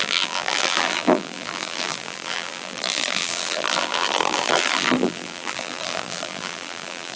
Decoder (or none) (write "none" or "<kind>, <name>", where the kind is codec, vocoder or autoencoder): vocoder, BigVGAN v2